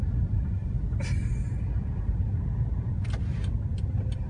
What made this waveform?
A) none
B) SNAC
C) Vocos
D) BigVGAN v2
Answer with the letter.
A